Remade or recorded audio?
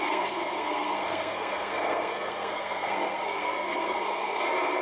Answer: remade